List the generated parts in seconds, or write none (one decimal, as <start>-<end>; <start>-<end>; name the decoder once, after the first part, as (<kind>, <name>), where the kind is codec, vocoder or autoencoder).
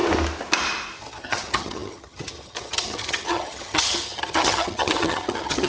1.0-5.7 (vocoder, HiFi-GAN)